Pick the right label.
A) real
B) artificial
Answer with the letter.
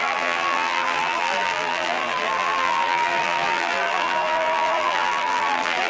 B